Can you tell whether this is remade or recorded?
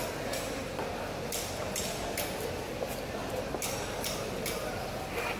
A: recorded